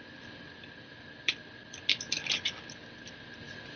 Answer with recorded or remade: recorded